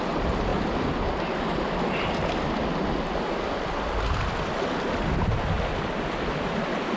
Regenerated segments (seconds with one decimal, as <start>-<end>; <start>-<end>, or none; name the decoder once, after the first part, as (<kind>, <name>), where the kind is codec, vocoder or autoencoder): none